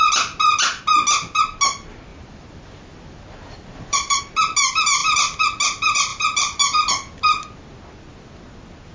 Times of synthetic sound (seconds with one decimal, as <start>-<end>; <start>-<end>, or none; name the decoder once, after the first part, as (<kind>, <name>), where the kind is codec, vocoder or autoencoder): 2.1-4.2 (vocoder, BigVGAN v2); 5.0-5.6; 6.1-6.9

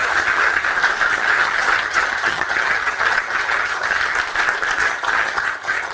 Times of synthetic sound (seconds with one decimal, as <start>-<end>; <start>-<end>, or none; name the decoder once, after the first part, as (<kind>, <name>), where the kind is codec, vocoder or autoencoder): 0.0-0.7 (vocoder, HiFi-GAN); 1.1-4.0; 4.8-5.9

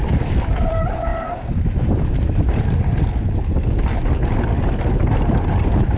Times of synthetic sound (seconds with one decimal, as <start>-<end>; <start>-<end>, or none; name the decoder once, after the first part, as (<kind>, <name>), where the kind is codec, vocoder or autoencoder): 0.0-1.1 (vocoder, BigVGAN v2); 4.7-6.0